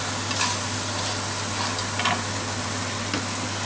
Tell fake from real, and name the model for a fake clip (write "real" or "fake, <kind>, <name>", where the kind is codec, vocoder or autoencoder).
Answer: real